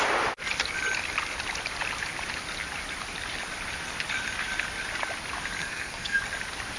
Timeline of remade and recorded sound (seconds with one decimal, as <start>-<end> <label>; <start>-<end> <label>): 0.0-5.6 recorded; 5.6-6.2 remade; 6.2-6.8 recorded